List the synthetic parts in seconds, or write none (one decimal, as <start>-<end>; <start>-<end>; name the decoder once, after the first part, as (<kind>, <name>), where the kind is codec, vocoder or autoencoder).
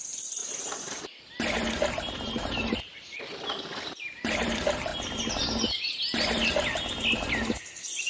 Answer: 0.0-0.4 (vocoder, BigVGAN v2); 1.9-3.1; 3.9-4.9